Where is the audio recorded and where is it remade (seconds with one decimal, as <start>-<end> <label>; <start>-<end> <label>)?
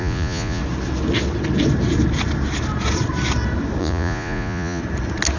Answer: 0.0-0.6 remade; 0.6-3.8 recorded; 3.8-4.8 remade; 4.8-5.4 recorded